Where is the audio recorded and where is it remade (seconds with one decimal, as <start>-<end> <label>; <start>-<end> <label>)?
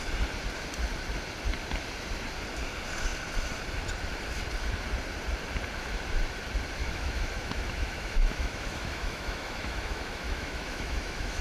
0.0-6.8 recorded; 6.8-11.4 remade